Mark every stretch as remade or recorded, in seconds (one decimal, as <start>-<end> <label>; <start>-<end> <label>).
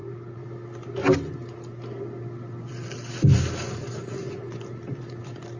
0.0-5.6 recorded